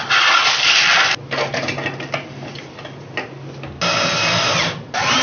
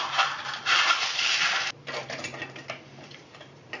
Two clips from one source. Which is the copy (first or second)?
second